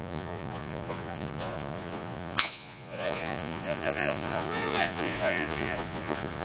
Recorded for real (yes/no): no